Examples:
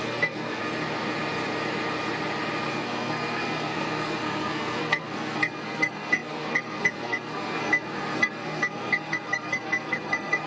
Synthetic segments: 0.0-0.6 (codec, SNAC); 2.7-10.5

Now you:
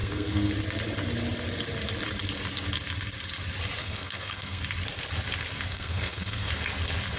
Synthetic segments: 0.0-0.5 (codec, SNAC); 3.8-4.6; 5.7-6.5

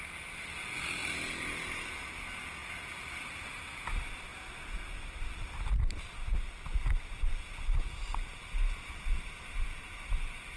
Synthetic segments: none

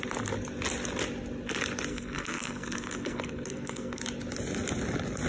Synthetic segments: 1.9-4.0 (codec, SNAC)

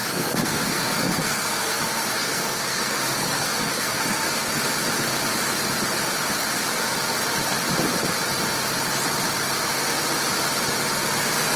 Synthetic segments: 0.0-4.5 (codec, SNAC)

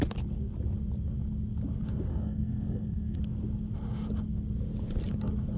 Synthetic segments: 2.1-3.2 (codec, SNAC)

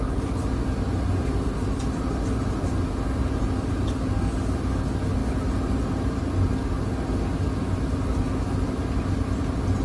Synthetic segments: none